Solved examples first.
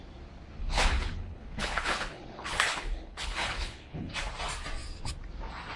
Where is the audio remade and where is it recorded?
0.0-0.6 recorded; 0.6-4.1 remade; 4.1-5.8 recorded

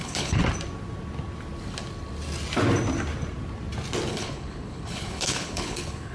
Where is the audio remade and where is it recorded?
0.0-0.4 remade; 0.4-4.1 recorded; 4.1-6.1 remade

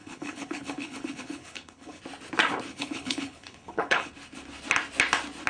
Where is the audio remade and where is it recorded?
0.0-2.0 remade; 2.0-2.7 recorded; 2.7-4.1 remade; 4.1-5.5 recorded

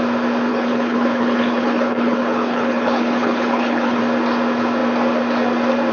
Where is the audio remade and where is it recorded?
0.0-0.5 recorded; 0.5-4.0 remade; 4.0-5.9 recorded

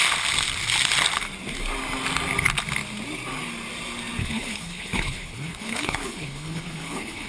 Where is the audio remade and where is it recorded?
0.0-4.2 recorded; 4.2-7.3 remade